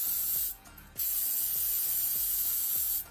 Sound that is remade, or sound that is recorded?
remade